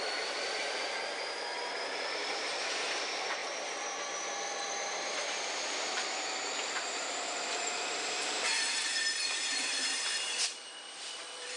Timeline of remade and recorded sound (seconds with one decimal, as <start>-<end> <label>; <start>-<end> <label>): 0.0-11.6 remade